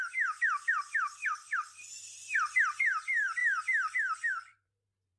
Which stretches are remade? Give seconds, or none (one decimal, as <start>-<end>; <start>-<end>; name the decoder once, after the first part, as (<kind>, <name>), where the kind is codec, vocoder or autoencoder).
0.0-5.2 (vocoder, BigVGAN v2)

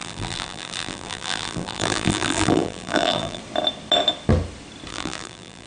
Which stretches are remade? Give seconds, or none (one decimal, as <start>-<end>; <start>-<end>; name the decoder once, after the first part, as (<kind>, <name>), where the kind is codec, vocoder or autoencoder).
0.0-3.4 (vocoder, BigVGAN v2); 4.9-5.7

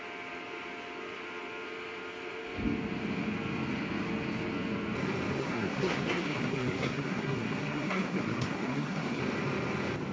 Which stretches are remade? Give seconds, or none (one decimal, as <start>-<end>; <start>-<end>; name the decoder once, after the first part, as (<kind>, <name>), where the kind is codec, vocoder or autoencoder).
5.4-9.2 (codec, SNAC)

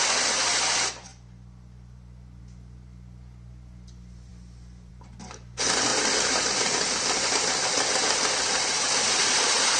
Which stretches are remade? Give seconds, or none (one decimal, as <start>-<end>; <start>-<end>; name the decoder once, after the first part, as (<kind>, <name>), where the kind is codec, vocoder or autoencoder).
5.9-7.3 (vocoder, BigVGAN v2)

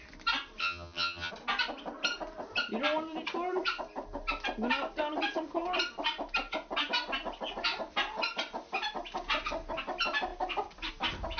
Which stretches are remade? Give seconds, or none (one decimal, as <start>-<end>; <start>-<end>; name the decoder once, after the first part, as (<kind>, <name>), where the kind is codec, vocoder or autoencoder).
0.6-1.3 (vocoder, HiFi-GAN)

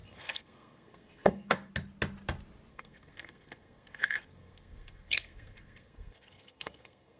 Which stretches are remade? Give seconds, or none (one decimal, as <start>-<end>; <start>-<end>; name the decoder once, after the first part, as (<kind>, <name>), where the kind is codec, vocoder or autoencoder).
0.0-1.7 (codec, SNAC); 2.7-7.2